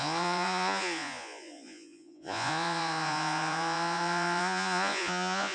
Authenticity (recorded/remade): remade